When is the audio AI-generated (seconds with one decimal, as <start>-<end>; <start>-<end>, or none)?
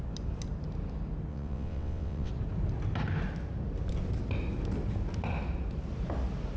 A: 1.3-2.3